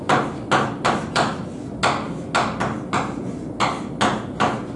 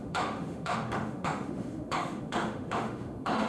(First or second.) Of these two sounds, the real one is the first